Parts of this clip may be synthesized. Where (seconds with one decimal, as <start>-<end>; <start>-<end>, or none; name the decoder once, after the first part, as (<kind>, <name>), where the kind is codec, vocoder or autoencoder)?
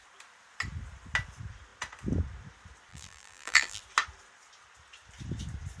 2.9-3.8 (vocoder, BigVGAN v2)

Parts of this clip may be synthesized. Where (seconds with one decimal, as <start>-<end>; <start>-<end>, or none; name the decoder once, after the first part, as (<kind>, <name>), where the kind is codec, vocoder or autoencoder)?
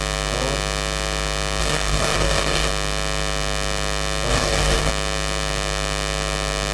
1.6-2.7 (codec, DAC); 4.3-4.9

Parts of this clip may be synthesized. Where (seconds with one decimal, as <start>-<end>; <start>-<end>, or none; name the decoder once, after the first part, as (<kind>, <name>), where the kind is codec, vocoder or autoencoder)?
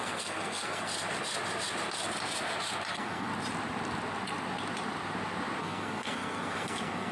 0.0-0.9 (codec, SNAC); 2.9-3.3; 5.6-7.1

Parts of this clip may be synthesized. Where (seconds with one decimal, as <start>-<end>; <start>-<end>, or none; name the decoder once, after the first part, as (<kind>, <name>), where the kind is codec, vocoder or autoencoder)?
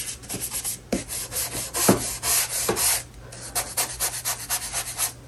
none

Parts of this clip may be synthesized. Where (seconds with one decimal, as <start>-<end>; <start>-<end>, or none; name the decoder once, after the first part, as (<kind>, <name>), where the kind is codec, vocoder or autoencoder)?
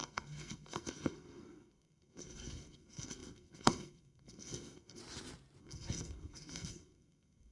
0.0-5.0 (codec, SNAC); 5.6-7.5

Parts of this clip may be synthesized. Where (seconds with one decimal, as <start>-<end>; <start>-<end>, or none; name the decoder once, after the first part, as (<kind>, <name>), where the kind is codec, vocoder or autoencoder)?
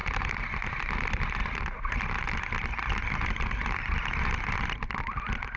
none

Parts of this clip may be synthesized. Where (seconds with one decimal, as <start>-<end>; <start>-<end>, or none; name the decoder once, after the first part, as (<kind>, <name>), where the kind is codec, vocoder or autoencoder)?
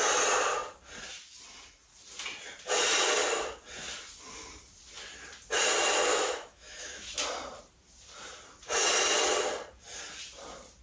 6.1-7.1 (autoencoder, DAC-VAE)